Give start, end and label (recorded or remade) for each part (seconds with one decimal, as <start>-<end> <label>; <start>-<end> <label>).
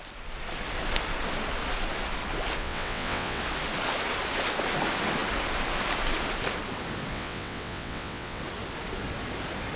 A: 0.0-2.6 recorded; 2.6-3.4 remade; 3.4-7.1 recorded; 7.1-8.4 remade; 8.4-9.8 recorded